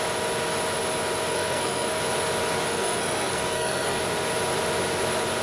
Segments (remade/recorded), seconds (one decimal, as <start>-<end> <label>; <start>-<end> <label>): 0.0-1.3 recorded; 1.3-2.0 remade; 2.0-2.7 recorded; 2.7-4.0 remade; 4.0-5.4 recorded